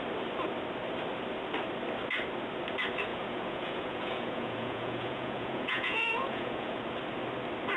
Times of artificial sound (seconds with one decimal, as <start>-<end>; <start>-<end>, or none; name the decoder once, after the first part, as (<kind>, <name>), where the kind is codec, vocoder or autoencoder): 3.1-6.8 (vocoder, Vocos)